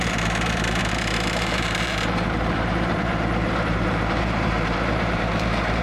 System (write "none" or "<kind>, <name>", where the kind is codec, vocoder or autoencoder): vocoder, BigVGAN v2